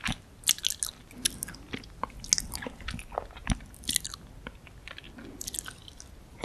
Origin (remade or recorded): recorded